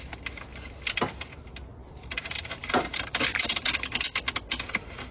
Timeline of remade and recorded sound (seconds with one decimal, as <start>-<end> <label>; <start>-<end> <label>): 0.0-1.7 recorded; 1.7-3.5 remade; 3.5-5.1 recorded